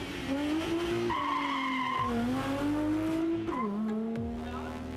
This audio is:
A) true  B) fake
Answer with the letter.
A